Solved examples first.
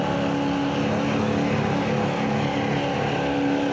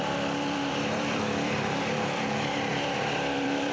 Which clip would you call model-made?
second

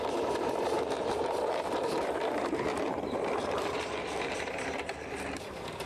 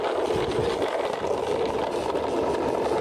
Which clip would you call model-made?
first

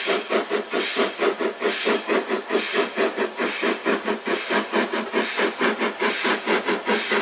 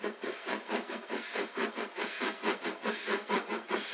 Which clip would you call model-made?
second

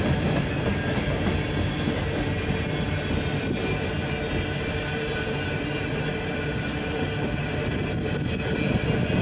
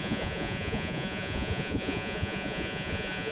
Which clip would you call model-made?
second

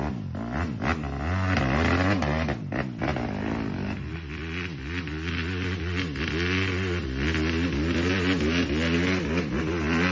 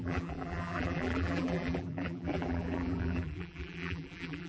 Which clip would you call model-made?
second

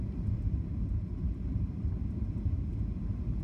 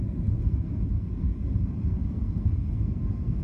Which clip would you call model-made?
second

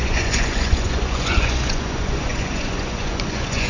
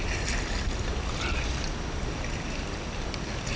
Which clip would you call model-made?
first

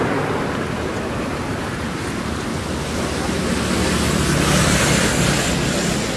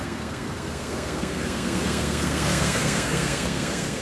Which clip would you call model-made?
second